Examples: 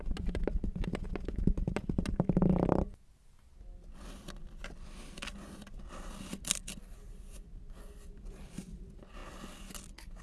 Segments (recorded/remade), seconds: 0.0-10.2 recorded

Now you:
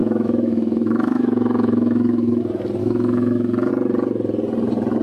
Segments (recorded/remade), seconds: 0.0-2.4 remade; 2.4-2.8 recorded; 2.8-3.7 remade; 3.7-5.0 recorded

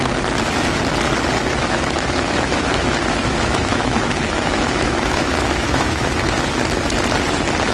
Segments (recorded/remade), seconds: 0.0-1.6 recorded; 1.6-6.1 remade; 6.1-7.7 recorded

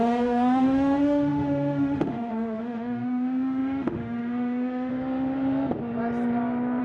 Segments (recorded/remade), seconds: 0.0-4.9 remade; 4.9-6.8 recorded

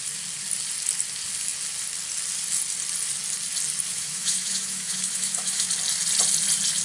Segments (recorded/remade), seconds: 0.0-3.9 recorded; 3.9-5.7 remade; 5.7-6.8 recorded

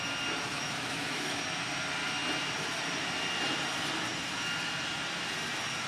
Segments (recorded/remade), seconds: 0.0-0.5 recorded; 0.5-1.4 remade; 1.4-5.9 recorded

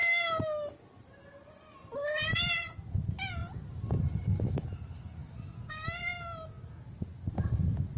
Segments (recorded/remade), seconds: 0.0-8.0 recorded